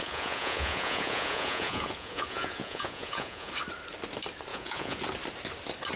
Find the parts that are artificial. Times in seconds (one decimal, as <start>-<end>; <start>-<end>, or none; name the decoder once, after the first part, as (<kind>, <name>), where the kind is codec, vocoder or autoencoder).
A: 0.0-3.5 (vocoder, Vocos); 4.5-5.0